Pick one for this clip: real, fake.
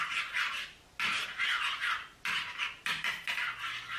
real